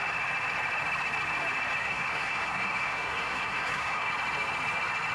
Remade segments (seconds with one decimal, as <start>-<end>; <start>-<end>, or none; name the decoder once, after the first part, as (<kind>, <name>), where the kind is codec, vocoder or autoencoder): 1.8-4.1 (codec, SNAC)